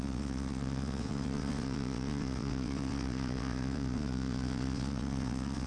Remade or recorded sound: remade